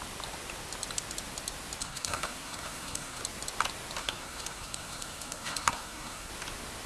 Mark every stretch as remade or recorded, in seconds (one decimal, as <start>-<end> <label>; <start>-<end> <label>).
0.0-1.8 recorded; 1.8-3.2 remade; 3.2-4.0 recorded; 4.0-6.3 remade; 6.3-6.9 recorded